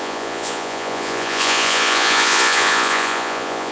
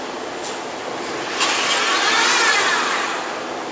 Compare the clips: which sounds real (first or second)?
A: second